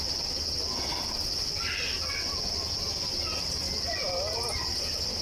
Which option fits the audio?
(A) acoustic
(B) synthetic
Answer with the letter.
A